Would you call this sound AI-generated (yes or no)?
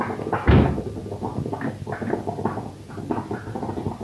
no